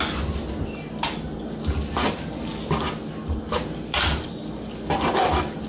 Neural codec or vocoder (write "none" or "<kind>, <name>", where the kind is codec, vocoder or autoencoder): none